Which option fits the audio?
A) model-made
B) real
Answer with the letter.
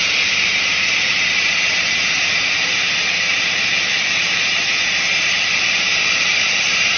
A